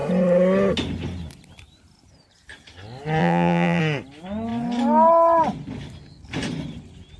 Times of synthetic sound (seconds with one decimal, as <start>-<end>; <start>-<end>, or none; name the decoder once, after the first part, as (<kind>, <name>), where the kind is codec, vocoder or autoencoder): 3.2-3.8 (vocoder, BigVGAN v2)